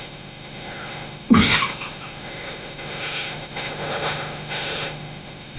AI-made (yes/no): yes